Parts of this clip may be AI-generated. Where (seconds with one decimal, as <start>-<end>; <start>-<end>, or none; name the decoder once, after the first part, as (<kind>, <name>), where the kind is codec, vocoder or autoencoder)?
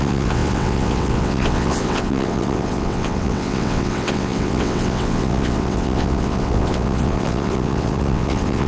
0.0-8.7 (vocoder, WaveNeXt)